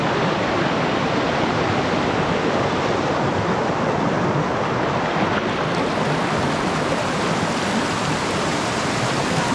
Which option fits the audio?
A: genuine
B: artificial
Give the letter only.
A